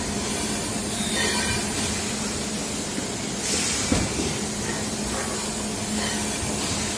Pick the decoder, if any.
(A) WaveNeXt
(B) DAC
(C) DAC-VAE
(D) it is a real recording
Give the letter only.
D